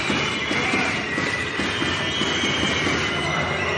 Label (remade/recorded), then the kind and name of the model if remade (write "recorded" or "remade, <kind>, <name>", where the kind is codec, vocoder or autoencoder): recorded